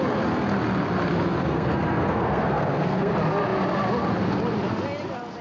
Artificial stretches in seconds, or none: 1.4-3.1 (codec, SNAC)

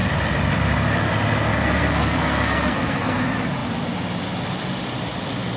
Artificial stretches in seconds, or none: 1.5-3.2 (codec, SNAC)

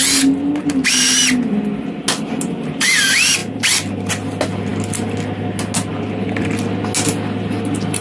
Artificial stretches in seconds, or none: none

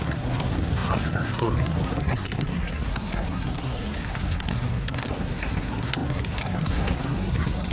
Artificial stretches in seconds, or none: 0.0-7.7 (codec, SNAC)

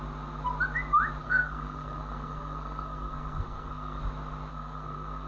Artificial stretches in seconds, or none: 1.2-4.0 (codec, SNAC); 4.5-5.3

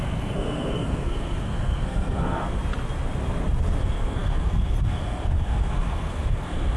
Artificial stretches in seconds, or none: 0.0-2.6 (codec, SNAC); 3.8-6.8

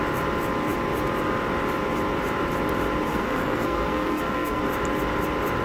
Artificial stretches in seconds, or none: 3.1-4.6 (codec, SNAC)